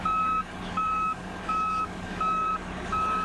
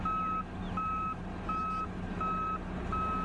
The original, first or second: second